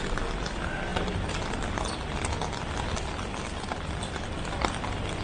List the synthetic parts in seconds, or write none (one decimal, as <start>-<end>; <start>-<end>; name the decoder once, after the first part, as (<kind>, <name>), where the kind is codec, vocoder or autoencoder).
none